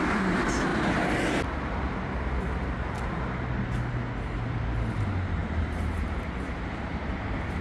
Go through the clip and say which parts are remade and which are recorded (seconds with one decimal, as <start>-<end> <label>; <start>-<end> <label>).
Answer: 0.0-5.4 recorded; 5.4-7.6 remade